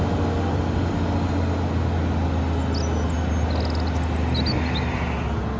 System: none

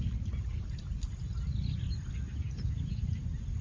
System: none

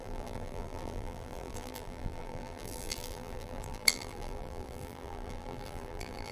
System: vocoder, BigVGAN v2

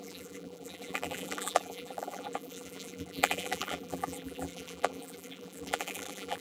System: vocoder, BigVGAN v2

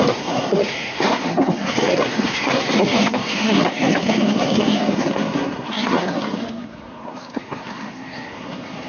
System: codec, SNAC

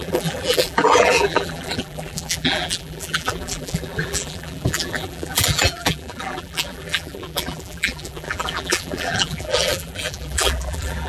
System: vocoder, BigVGAN v2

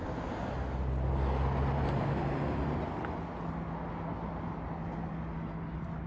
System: none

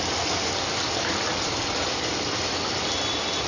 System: none